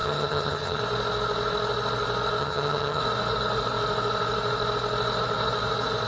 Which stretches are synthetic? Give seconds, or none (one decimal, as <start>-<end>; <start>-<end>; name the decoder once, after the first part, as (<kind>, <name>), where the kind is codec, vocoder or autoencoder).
0.0-0.8 (vocoder, HiFi-GAN); 2.4-3.0